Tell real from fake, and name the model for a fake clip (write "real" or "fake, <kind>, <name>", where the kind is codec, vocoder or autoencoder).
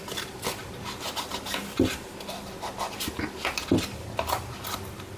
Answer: real